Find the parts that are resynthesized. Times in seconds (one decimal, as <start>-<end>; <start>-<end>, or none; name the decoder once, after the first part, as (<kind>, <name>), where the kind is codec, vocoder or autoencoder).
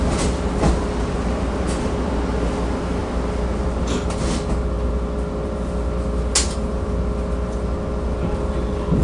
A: none